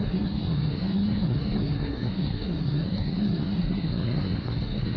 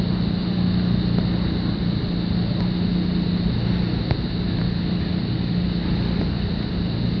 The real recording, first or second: second